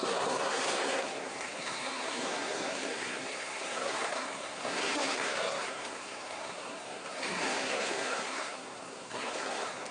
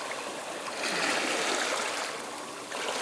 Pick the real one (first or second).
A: second